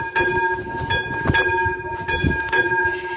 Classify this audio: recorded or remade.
remade